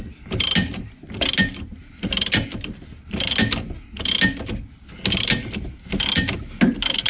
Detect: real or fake real